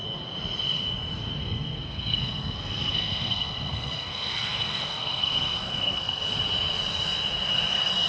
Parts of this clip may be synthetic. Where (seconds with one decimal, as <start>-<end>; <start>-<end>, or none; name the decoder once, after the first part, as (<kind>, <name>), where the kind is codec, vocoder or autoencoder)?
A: 1.4-6.2 (codec, SNAC)